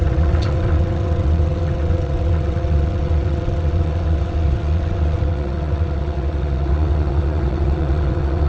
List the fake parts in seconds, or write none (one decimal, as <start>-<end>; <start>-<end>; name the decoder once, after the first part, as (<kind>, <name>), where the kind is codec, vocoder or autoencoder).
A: 0.0-8.5 (vocoder, WaveNeXt)